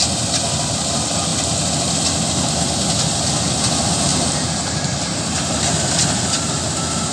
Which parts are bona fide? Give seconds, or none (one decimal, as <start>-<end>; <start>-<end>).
0.0-4.1; 6.4-7.1